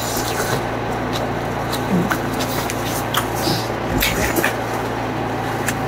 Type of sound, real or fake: real